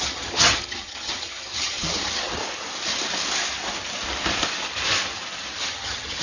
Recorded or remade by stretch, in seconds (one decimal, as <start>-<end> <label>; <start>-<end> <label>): 0.0-2.4 remade; 2.4-5.6 recorded; 5.6-6.2 remade